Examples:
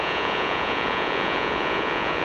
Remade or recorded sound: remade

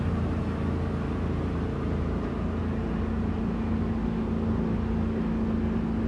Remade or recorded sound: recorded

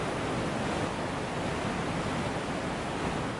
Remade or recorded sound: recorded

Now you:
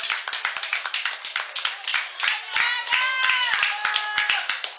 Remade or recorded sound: recorded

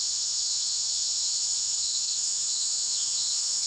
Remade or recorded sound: remade